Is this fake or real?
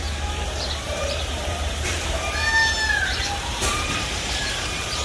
fake